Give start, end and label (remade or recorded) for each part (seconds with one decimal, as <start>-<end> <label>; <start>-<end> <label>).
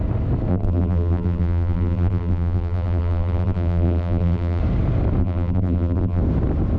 0.0-0.5 recorded; 0.5-4.6 remade; 4.6-5.2 recorded; 5.2-6.2 remade; 6.2-6.8 recorded